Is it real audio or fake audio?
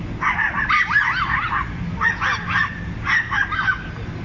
real